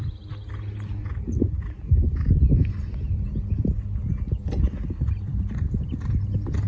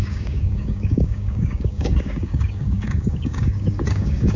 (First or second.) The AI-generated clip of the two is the second